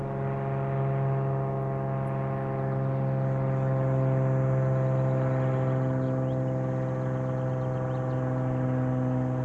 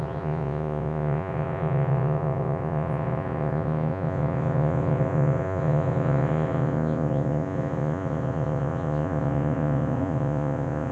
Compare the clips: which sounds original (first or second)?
first